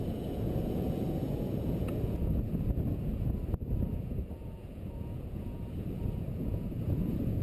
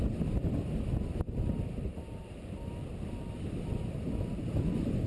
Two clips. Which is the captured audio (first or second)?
second